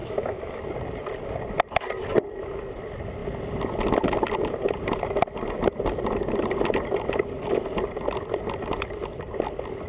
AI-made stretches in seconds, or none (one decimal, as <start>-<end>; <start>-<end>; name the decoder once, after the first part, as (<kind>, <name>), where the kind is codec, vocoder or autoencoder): 0.0-0.6 (autoencoder, DAC-VAE)